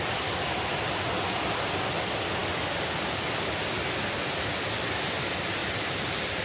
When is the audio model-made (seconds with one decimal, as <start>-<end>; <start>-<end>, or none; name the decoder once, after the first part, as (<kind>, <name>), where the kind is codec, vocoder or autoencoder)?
none